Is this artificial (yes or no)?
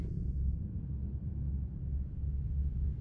no